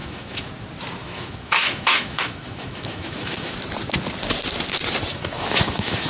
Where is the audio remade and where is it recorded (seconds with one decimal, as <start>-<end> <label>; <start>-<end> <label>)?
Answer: 0.0-0.5 remade; 0.5-1.0 recorded; 1.0-3.5 remade; 3.5-5.1 recorded; 5.1-6.1 remade

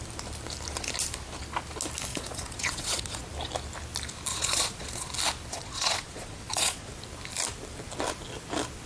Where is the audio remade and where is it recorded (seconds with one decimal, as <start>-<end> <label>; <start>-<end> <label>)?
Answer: 0.0-2.1 recorded; 2.1-3.2 remade; 3.2-4.3 recorded; 4.3-5.1 remade; 5.1-5.5 recorded; 5.5-6.9 remade; 6.9-8.9 recorded

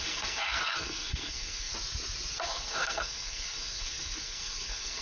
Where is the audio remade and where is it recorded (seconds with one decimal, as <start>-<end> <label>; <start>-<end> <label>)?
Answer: 0.0-1.7 remade; 1.7-2.3 recorded; 2.3-5.0 remade

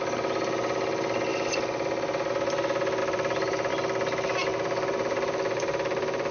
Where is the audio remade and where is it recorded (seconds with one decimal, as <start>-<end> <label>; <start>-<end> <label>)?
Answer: 0.0-3.0 recorded; 3.0-3.7 remade; 3.7-4.5 recorded; 4.5-6.3 remade

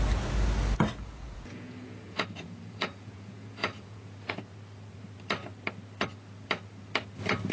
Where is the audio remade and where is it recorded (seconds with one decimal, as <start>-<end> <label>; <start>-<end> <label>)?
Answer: 0.0-1.0 recorded; 1.0-4.4 remade; 4.4-7.5 recorded

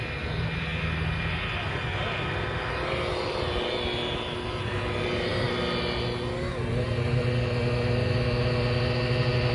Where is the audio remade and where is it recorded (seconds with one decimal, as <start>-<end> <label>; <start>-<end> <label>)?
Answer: 0.0-9.5 recorded

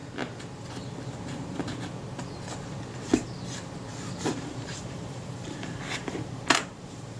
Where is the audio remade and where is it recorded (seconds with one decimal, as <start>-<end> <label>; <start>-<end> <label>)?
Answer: 0.0-4.2 recorded; 4.2-7.2 remade